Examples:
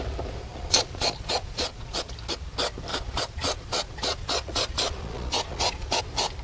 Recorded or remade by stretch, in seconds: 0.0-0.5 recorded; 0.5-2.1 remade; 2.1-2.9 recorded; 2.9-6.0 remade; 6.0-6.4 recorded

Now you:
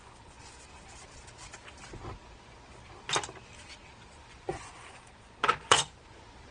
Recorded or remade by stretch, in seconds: 0.0-0.8 remade; 0.8-4.1 recorded; 4.1-6.5 remade